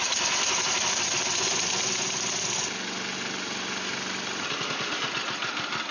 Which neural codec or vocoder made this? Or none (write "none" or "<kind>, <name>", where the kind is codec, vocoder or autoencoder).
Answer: none